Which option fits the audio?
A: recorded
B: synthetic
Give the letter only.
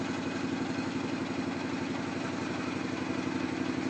A